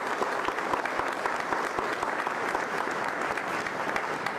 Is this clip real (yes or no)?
yes